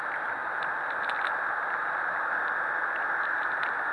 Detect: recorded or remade recorded